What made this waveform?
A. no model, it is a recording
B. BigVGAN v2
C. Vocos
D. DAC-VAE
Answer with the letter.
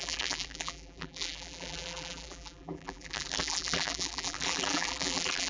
B